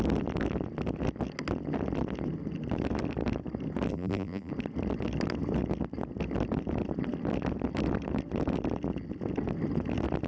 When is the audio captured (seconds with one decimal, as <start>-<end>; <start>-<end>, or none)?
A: 0.0-3.9; 4.5-10.3